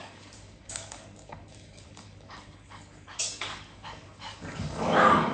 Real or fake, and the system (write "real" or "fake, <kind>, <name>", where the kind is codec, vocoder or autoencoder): fake, codec, DAC